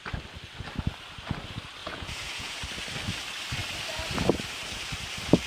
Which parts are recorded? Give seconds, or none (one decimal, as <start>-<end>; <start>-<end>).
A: 0.0-1.8; 2.6-5.5